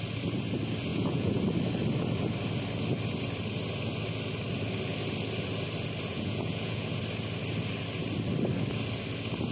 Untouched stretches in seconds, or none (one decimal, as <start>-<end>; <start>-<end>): 0.0-0.9; 1.4-6.1; 7.0-9.5